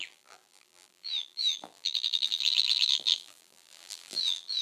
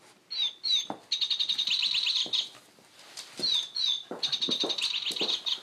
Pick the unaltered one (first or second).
second